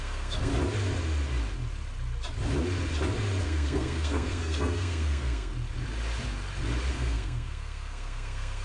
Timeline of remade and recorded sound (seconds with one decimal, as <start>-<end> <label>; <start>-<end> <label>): 0.0-0.5 remade; 0.5-3.4 recorded; 3.4-5.5 remade; 5.5-6.9 recorded; 6.9-8.6 remade